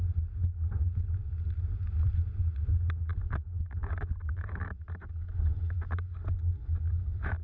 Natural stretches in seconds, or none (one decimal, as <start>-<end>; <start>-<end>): 0.0-7.4